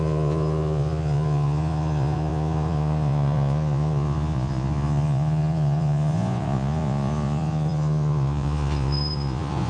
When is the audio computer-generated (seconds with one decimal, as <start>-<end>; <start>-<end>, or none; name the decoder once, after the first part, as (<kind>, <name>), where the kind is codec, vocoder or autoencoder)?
0.0-9.7 (vocoder, Vocos)